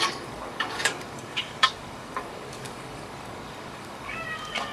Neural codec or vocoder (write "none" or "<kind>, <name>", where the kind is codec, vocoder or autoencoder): codec, DAC